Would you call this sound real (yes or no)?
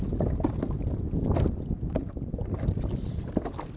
yes